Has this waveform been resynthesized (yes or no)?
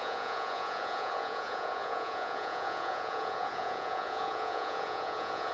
yes